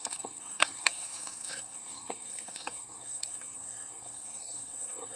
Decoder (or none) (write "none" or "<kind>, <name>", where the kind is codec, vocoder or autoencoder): codec, SNAC